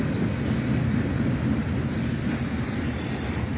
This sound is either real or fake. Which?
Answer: real